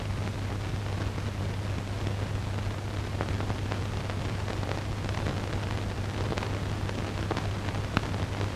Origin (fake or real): real